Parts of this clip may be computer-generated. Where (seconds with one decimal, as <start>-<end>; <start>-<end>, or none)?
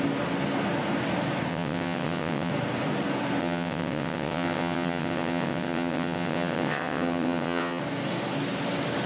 1.5-2.5; 3.4-7.8